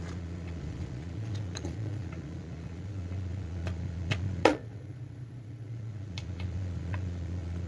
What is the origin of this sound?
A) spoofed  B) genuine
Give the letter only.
A